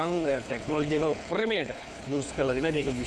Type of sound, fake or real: fake